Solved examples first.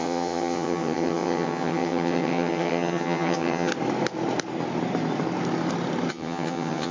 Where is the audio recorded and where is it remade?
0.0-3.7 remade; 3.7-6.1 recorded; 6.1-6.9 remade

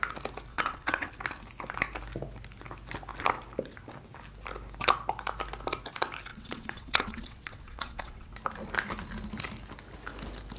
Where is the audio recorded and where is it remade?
0.0-0.5 recorded; 0.5-1.1 remade; 1.1-6.3 recorded; 6.3-8.3 remade; 8.3-10.6 recorded

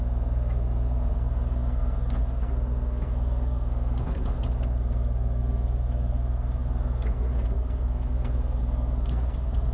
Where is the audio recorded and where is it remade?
0.0-9.7 remade

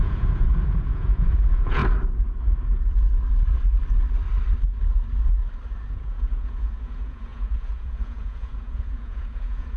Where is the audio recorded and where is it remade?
0.0-1.8 remade; 1.8-5.9 recorded; 5.9-9.8 remade

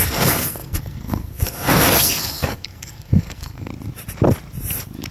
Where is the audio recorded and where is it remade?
0.0-3.7 remade; 3.7-5.1 recorded

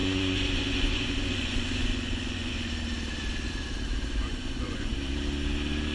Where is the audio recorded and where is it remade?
0.0-2.7 remade; 2.7-4.3 recorded; 4.3-4.9 remade; 4.9-5.9 recorded